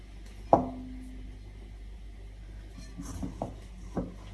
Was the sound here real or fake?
real